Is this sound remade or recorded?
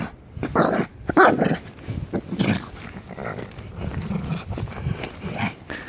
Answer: recorded